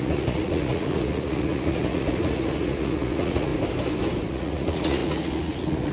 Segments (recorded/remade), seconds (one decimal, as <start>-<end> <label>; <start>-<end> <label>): 0.0-3.5 remade; 3.5-4.2 recorded; 4.2-5.9 remade